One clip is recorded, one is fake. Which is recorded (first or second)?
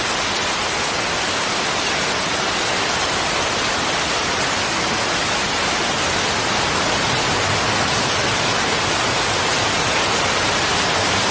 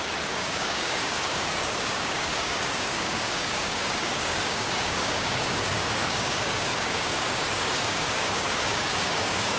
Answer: first